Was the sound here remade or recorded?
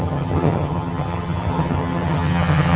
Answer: remade